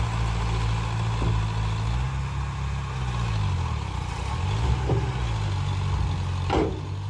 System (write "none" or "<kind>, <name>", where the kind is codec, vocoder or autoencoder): none